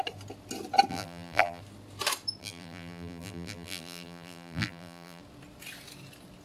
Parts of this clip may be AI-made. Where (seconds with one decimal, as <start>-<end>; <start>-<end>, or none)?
0.9-1.6; 2.4-5.2